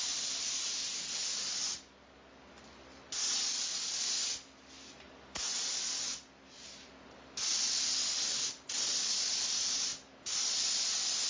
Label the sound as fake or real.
real